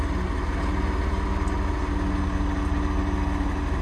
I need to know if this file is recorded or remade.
recorded